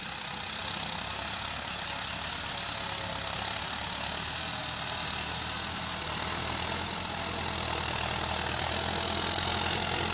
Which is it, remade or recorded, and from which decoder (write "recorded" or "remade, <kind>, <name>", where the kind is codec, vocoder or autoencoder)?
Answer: recorded